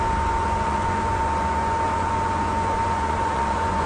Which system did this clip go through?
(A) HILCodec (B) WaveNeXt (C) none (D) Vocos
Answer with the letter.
D